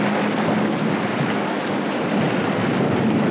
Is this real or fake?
real